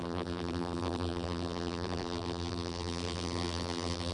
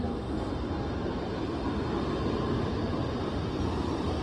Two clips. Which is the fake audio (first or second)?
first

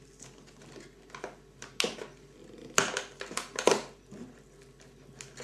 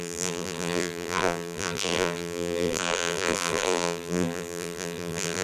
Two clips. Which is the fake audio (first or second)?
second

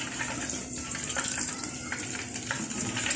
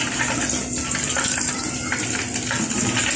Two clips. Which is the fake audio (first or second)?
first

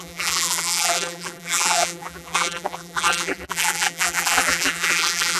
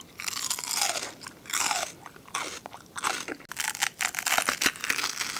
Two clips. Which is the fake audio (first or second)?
first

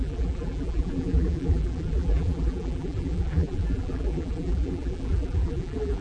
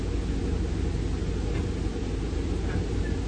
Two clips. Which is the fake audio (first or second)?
first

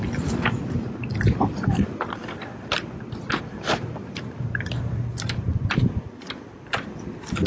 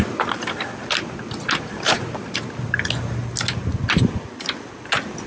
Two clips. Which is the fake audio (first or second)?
first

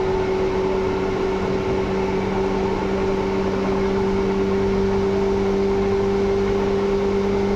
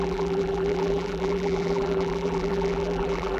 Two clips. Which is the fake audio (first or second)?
second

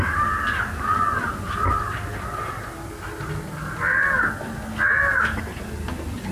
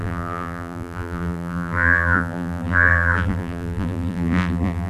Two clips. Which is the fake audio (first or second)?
second